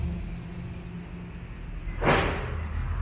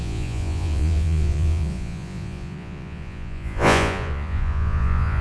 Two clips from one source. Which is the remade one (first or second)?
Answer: second